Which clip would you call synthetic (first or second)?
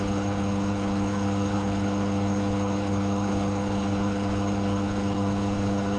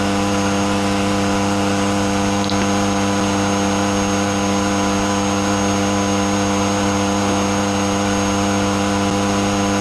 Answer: first